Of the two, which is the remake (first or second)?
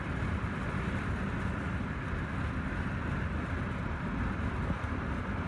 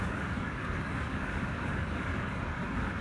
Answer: second